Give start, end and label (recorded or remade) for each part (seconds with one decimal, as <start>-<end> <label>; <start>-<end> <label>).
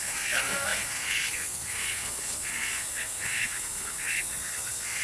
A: 0.0-5.0 remade